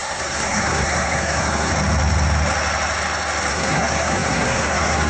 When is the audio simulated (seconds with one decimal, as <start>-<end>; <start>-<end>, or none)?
0.0-1.7; 3.5-5.1